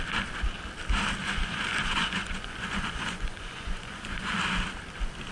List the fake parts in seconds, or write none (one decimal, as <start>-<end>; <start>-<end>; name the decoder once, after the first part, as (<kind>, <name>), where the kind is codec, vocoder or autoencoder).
1.2-4.4 (vocoder, Vocos)